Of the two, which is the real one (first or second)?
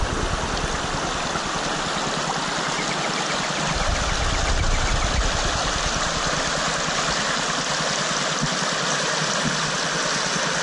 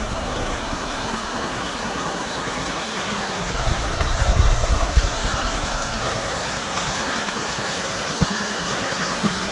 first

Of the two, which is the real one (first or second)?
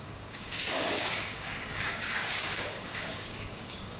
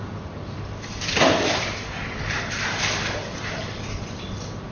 second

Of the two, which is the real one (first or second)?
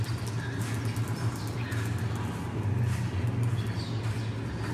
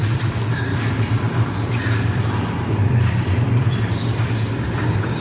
first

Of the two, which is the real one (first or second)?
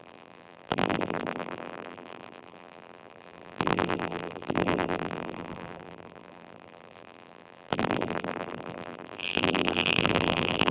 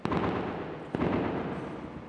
second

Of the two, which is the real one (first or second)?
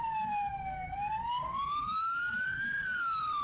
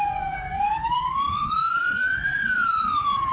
first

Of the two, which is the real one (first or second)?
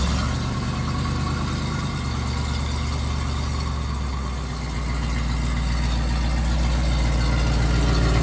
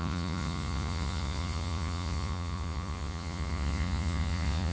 first